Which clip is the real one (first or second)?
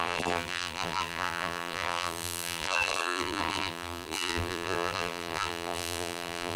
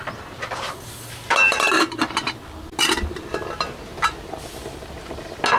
second